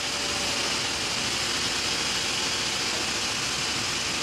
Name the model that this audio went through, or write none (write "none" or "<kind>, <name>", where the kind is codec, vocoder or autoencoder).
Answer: none